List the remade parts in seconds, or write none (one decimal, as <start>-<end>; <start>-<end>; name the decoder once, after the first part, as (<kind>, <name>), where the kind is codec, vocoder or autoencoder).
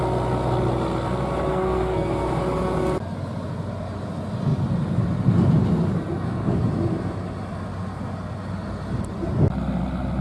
1.5-2.3 (codec, SNAC)